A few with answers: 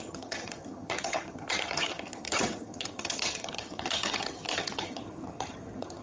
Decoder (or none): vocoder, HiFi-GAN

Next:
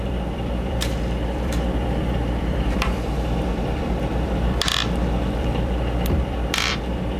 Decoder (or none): vocoder, BigVGAN v2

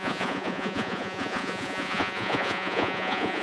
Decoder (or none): vocoder, Vocos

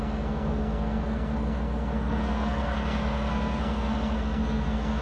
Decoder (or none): codec, SNAC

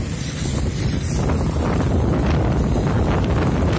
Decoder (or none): none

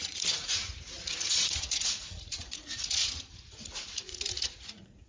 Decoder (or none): vocoder, Vocos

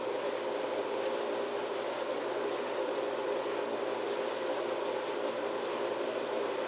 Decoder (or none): none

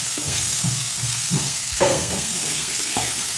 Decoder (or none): codec, SNAC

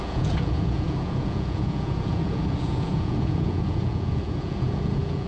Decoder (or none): vocoder, Vocos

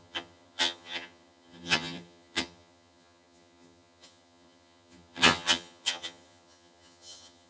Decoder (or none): vocoder, HiFi-GAN